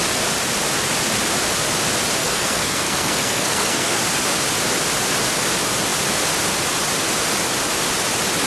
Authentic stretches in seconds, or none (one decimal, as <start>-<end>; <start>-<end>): 0.0-2.2; 4.0-8.5